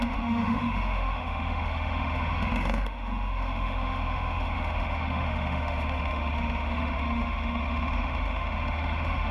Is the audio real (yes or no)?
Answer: no